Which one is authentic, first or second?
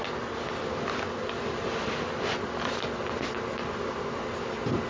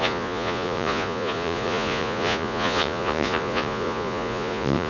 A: first